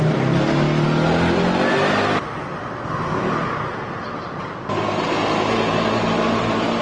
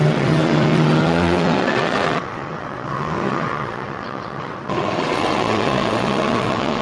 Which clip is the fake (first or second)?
second